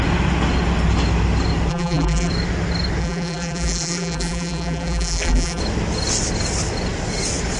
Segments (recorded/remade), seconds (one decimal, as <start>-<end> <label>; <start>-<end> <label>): 0.0-1.7 recorded; 1.7-2.3 remade; 2.3-3.0 recorded; 3.0-5.6 remade; 5.6-7.6 recorded